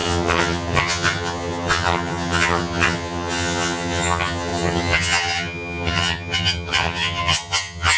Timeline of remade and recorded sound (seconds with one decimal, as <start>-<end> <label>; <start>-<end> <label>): 0.0-8.0 remade